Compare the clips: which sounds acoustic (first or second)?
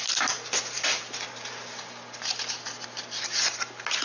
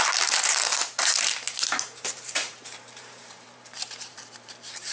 first